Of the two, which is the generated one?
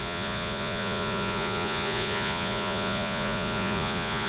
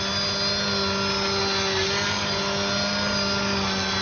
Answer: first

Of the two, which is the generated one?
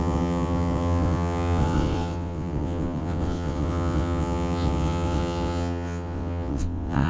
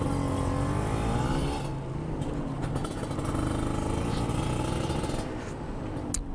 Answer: first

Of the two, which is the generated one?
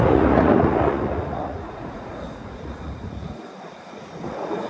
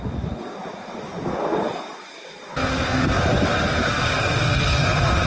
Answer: first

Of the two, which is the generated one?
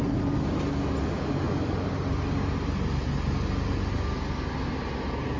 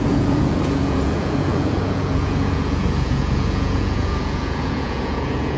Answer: second